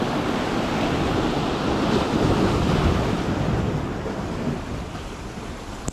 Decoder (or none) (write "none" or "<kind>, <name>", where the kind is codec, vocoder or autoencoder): none